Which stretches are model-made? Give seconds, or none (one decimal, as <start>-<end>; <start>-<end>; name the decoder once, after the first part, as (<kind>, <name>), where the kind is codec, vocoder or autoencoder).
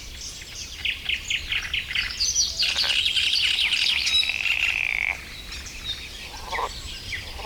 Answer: 3.1-3.8 (vocoder, BigVGAN v2)